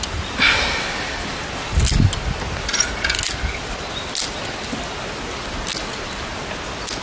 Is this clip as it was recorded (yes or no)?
yes